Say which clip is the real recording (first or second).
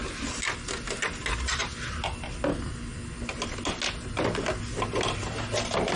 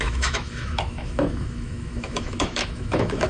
first